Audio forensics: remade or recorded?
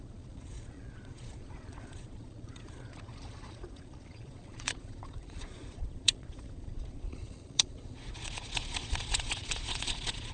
remade